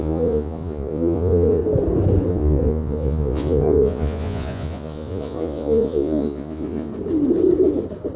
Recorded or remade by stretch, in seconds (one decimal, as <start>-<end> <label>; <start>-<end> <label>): 0.0-1.6 remade; 1.6-2.3 recorded; 2.3-6.9 remade; 6.9-8.2 recorded

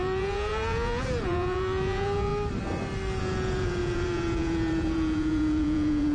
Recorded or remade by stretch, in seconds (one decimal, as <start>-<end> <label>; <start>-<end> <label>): 0.0-2.3 remade; 2.3-3.2 recorded; 3.2-6.1 remade